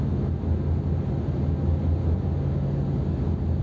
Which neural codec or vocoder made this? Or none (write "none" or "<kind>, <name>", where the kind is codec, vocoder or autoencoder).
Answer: none